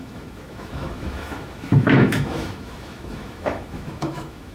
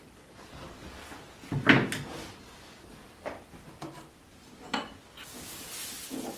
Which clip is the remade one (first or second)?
first